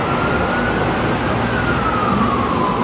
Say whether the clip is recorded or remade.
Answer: recorded